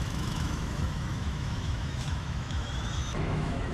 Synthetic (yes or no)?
yes